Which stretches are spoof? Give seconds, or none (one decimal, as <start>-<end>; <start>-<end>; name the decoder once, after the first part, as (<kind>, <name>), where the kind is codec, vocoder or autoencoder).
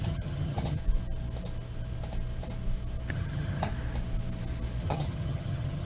0.0-0.8 (vocoder, HiFi-GAN); 3.1-3.7; 4.8-5.8